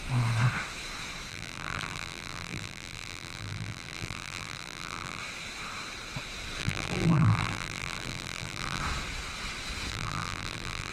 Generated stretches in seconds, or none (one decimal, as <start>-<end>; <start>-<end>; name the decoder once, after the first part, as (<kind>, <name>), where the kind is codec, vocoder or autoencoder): 1.3-5.2 (vocoder, BigVGAN v2); 6.6-8.8; 9.9-10.9

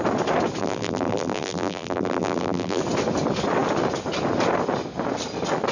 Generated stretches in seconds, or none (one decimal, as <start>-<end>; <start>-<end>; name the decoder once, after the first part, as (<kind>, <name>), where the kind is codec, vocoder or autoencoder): 0.6-2.8 (vocoder, BigVGAN v2)

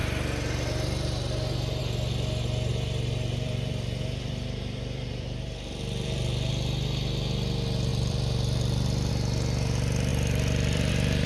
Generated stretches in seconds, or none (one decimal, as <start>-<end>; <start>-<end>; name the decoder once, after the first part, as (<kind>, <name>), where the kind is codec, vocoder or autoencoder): 2.7-6.5 (vocoder, BigVGAN v2); 7.9-9.1; 10.1-10.9

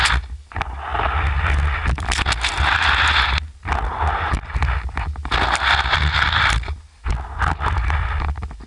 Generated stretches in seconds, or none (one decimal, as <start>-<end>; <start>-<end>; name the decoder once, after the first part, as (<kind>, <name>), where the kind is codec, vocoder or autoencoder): none

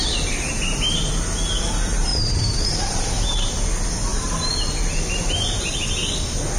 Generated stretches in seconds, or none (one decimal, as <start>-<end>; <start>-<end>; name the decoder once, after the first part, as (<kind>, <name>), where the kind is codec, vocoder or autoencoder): 2.1-3.5 (vocoder, BigVGAN v2); 4.1-5.6

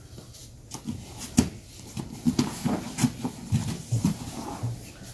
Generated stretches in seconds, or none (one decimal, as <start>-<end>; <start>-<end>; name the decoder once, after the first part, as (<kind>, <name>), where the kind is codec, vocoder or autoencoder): 3.6-5.1 (vocoder, BigVGAN v2)

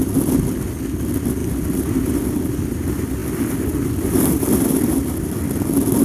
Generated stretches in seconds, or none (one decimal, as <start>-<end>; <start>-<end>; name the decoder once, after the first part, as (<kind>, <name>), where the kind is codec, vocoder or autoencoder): none

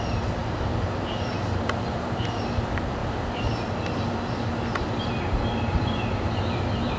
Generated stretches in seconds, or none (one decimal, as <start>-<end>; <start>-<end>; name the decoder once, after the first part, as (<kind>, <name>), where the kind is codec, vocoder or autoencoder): 0.0-3.0 (vocoder, BigVGAN v2); 5.7-7.0